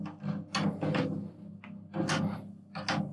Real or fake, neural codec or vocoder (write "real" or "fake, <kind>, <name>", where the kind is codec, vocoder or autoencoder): real